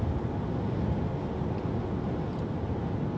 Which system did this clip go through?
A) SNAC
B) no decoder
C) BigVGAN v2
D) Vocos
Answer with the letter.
B